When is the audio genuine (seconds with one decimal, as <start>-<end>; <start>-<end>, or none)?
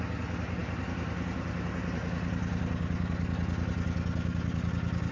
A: 0.0-5.1